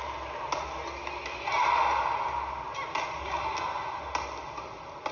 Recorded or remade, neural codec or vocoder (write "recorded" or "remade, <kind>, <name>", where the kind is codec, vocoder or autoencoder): recorded